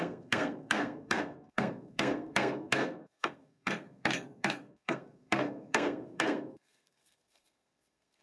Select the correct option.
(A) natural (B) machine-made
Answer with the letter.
B